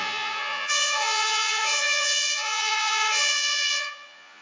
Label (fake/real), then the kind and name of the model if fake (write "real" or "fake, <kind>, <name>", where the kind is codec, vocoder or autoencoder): fake, vocoder, Vocos